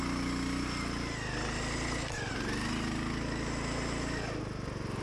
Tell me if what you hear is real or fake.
real